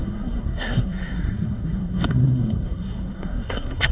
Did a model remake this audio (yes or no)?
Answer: yes